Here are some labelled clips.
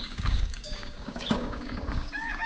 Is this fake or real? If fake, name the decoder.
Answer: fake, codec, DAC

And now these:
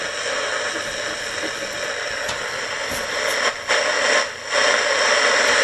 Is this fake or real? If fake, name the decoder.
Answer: real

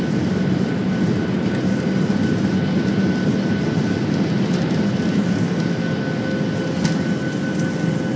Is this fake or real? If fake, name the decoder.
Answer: real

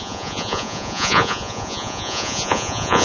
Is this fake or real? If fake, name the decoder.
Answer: fake, vocoder, Vocos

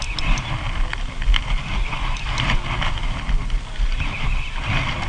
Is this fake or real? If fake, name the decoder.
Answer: real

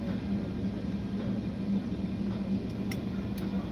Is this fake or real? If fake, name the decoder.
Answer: real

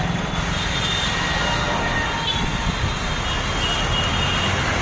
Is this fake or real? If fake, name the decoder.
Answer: real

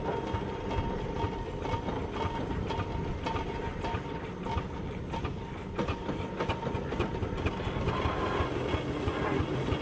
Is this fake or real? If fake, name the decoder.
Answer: real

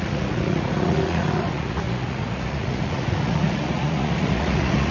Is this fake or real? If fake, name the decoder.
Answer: fake, vocoder, Vocos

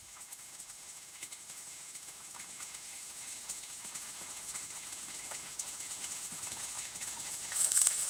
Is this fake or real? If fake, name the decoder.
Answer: fake, autoencoder, DAC-VAE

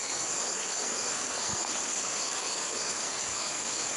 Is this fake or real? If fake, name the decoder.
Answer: fake, codec, SNAC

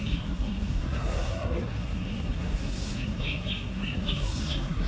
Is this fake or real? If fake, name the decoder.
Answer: fake, codec, SNAC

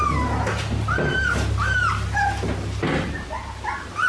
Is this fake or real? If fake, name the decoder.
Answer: real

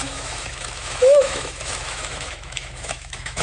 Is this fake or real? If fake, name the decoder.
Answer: fake, autoencoder, DAC-VAE